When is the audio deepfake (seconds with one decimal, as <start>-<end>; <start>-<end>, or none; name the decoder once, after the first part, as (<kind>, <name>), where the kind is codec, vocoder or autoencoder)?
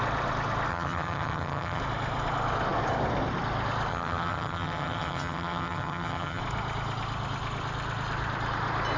0.7-1.8 (vocoder, HiFi-GAN); 3.9-6.4